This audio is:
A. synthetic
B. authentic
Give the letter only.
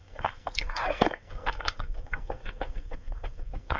A